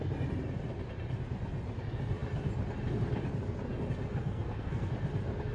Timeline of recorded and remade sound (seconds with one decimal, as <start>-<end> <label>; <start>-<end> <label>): 0.0-4.1 recorded; 4.1-4.9 remade; 4.9-5.5 recorded

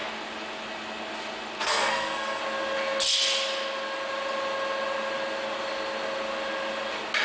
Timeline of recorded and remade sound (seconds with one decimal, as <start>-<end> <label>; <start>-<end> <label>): 0.0-1.6 recorded; 1.6-2.4 remade; 2.4-7.2 recorded

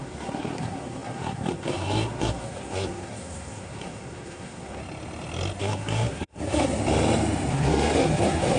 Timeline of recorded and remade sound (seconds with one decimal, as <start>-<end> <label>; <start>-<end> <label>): 0.0-4.8 remade; 4.8-5.6 recorded; 5.6-6.8 remade; 6.8-7.5 recorded; 7.5-8.6 remade

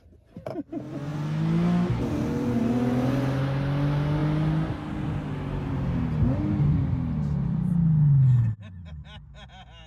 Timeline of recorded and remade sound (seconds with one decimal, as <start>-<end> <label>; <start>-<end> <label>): 0.0-9.9 recorded

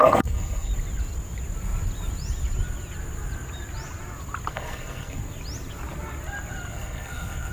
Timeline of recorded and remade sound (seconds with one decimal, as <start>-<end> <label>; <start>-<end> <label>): 0.0-0.7 remade; 0.7-4.5 recorded; 4.5-5.2 remade; 5.2-6.7 recorded; 6.7-7.5 remade

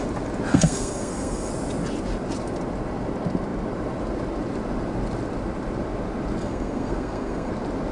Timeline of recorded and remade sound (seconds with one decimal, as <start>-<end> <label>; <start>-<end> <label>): 0.0-0.5 recorded; 0.5-1.5 remade; 1.5-6.4 recorded; 6.4-7.5 remade; 7.5-7.9 recorded

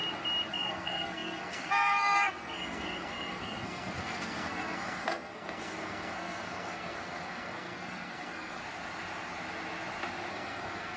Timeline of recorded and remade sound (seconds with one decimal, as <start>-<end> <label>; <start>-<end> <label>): 0.0-0.5 recorded; 0.5-8.6 remade; 8.6-10.3 recorded; 10.3-11.0 remade